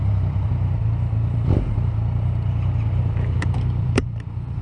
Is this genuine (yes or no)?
no